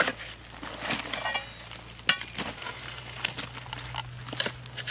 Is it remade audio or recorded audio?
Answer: recorded